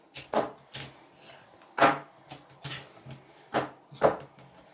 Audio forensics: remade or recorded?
recorded